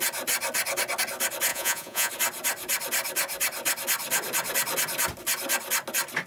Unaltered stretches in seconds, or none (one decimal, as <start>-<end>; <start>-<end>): 0.0-1.5; 2.1-6.3